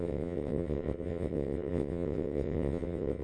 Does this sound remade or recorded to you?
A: remade